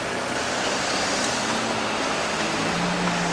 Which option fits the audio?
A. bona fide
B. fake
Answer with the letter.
A